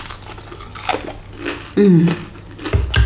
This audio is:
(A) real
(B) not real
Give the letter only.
A